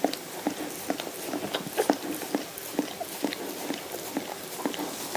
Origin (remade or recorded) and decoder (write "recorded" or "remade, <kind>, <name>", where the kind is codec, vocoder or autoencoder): recorded